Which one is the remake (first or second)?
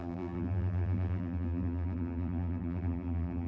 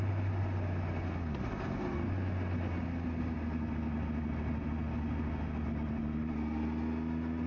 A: first